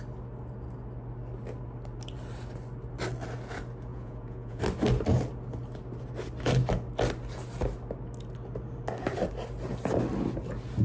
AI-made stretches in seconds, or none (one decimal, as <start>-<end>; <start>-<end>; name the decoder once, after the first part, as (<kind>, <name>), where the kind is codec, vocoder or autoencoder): 3.9-4.6 (vocoder, Vocos)